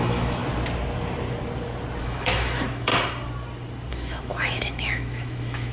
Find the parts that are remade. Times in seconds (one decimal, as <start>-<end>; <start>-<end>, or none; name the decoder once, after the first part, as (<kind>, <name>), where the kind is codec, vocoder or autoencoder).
0.0-0.4 (autoencoder, DAC-VAE); 2.0-2.9; 3.9-5.7